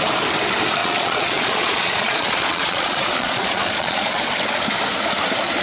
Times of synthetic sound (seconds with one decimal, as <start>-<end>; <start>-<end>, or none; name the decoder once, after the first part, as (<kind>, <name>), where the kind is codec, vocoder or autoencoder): 0.8-4.2 (vocoder, Vocos)